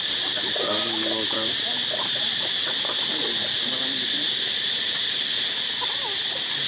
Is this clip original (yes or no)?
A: no